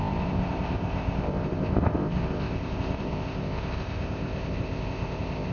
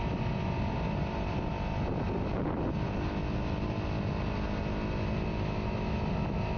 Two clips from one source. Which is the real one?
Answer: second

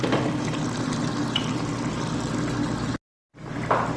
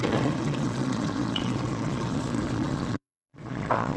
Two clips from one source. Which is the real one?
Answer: first